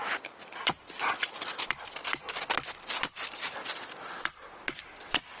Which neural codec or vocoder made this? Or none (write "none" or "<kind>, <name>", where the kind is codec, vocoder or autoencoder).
none